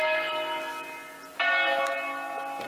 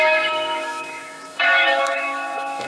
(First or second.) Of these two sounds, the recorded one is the first